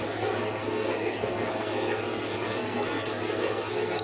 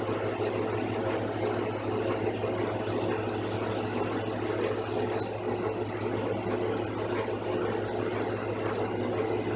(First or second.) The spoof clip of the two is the first